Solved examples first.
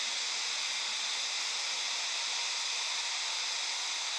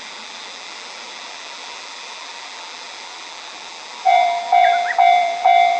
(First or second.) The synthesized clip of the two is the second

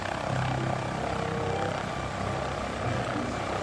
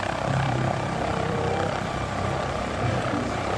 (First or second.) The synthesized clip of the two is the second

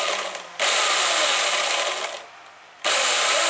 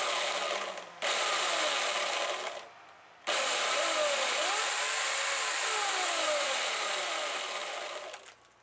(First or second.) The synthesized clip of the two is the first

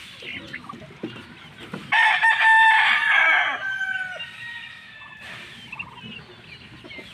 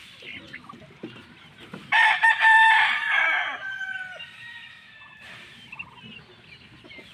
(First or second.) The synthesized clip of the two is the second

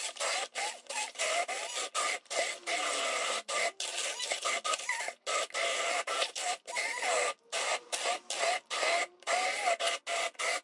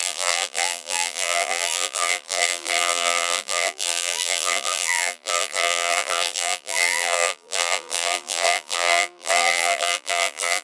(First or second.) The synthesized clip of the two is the second